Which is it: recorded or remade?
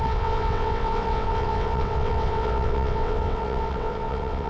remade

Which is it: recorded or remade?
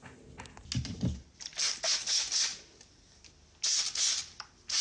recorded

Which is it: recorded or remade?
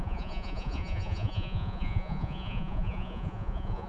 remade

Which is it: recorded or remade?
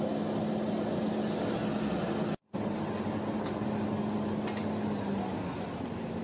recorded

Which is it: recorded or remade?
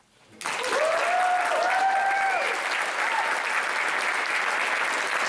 recorded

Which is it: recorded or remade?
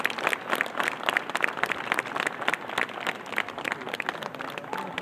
recorded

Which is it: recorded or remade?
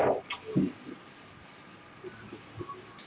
recorded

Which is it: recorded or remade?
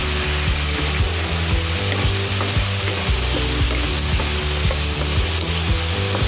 recorded